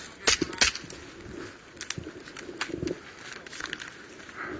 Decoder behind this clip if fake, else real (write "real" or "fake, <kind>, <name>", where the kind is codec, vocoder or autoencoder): real